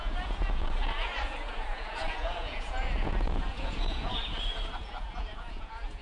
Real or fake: fake